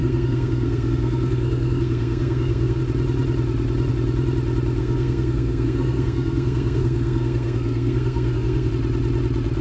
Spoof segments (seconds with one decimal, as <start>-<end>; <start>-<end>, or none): 0.0-2.8; 4.8-8.7